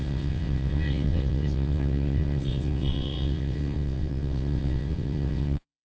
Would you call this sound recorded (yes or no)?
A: no